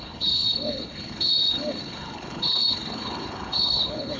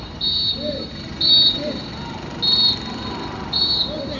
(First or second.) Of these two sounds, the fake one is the first